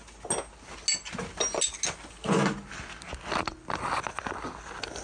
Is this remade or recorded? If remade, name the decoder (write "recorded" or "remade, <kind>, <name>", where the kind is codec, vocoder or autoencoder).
recorded